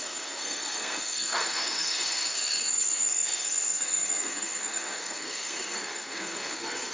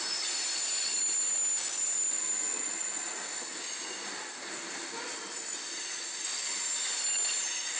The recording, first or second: second